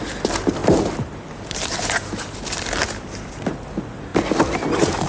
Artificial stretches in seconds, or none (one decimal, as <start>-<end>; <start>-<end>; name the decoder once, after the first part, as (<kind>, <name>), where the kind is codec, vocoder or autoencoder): none